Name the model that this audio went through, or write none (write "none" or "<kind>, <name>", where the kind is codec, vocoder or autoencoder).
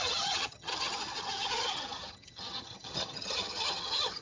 vocoder, HiFi-GAN